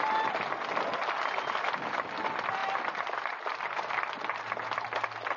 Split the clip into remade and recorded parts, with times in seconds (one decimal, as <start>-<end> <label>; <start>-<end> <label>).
0.0-5.4 recorded